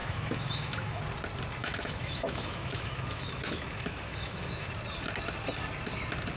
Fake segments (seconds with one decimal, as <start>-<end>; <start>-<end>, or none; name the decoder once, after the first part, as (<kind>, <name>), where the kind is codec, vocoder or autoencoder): 0.0-1.0 (autoencoder, DAC-VAE); 1.6-4.7

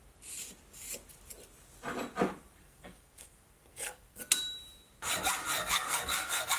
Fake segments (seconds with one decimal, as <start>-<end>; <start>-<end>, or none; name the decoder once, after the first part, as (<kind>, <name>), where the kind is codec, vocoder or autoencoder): 2.6-4.2 (codec, SNAC); 5.6-6.6